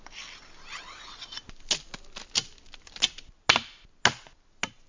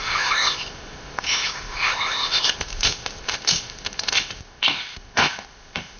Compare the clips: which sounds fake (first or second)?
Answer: second